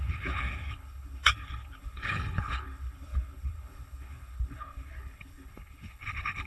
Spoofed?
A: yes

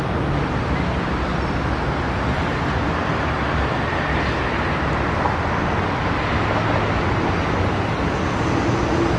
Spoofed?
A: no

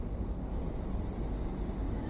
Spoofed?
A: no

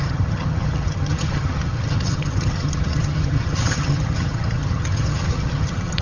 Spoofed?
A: yes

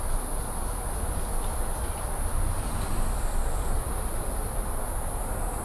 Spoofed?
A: no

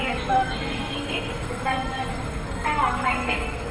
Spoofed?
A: yes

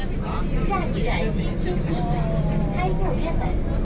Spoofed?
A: no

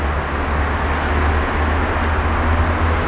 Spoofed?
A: no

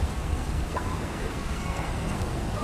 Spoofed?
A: yes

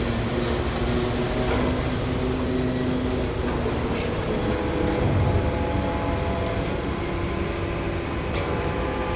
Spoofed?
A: no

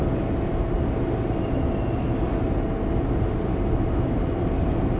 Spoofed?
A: no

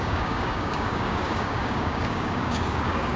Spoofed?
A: yes